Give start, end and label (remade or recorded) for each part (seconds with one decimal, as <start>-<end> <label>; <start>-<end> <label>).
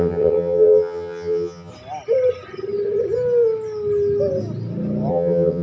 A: 0.0-1.7 remade; 1.7-5.1 recorded; 5.1-5.6 remade